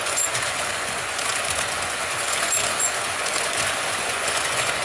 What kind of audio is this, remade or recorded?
remade